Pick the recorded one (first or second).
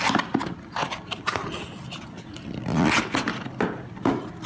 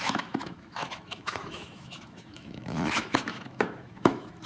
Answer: first